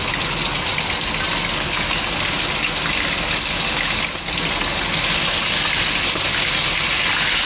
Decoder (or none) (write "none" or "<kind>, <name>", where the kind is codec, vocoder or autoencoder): none